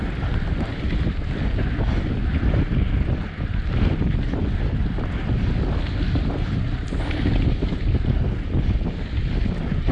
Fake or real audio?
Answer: real